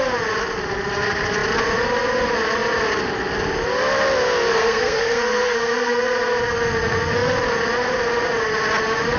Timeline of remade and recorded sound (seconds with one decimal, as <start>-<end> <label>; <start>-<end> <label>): 0.0-4.5 recorded; 4.5-6.0 remade; 6.0-9.2 recorded